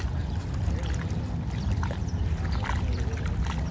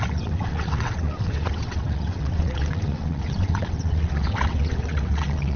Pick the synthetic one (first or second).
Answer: second